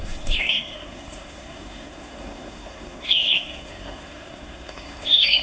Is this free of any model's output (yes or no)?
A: no